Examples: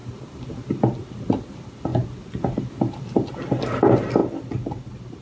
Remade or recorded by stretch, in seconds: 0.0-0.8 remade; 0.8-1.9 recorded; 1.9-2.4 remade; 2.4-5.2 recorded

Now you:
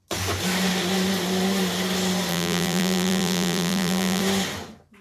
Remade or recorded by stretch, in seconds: 0.0-2.3 recorded; 2.3-4.2 remade; 4.2-5.0 recorded